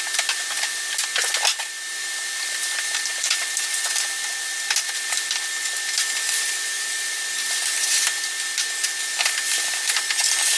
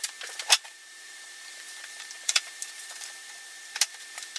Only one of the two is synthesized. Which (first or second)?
second